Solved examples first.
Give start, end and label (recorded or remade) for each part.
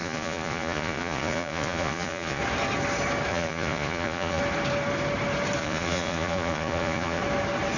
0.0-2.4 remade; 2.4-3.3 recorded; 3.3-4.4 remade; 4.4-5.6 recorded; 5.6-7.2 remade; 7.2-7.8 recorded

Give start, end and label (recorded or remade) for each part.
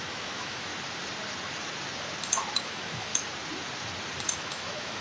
0.0-0.7 remade; 0.7-2.6 recorded; 2.6-3.1 remade; 3.1-4.4 recorded; 4.4-5.0 remade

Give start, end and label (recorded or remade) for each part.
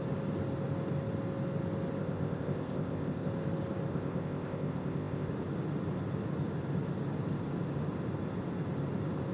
0.0-2.0 recorded; 2.0-3.3 remade; 3.3-3.9 recorded; 3.9-5.3 remade; 5.3-9.3 recorded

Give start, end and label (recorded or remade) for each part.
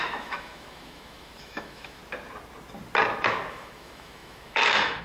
0.0-2.0 remade; 2.0-3.5 recorded; 3.5-5.0 remade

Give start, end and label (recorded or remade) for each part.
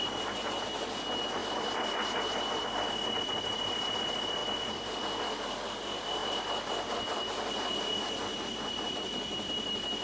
0.0-4.4 recorded; 4.4-5.0 remade; 5.0-8.3 recorded; 8.3-9.1 remade; 9.1-10.0 recorded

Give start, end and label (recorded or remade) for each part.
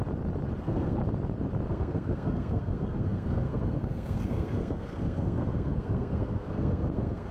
0.0-0.6 recorded; 0.6-1.0 remade; 1.0-1.7 recorded; 1.7-7.3 remade